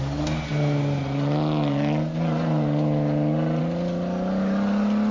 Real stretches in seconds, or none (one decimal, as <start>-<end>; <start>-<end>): 0.0-5.1